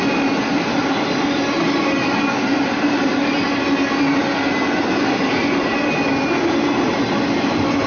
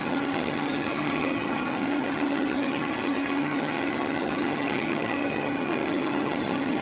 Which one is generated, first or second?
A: second